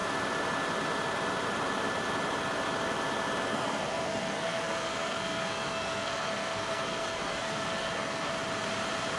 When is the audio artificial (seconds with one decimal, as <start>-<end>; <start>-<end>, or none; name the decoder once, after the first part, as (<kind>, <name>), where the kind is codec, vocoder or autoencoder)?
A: 3.5-8.3 (codec, SNAC)